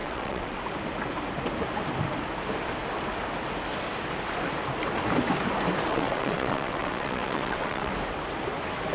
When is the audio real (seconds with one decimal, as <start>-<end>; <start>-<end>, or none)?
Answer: 0.6-5.9; 7.9-8.9